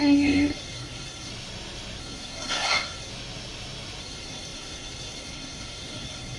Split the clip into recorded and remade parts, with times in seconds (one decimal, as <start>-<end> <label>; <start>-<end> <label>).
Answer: 0.0-1.3 remade; 1.3-2.0 recorded; 2.0-3.1 remade; 3.1-4.0 recorded; 4.0-6.4 remade